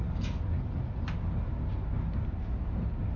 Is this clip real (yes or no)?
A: yes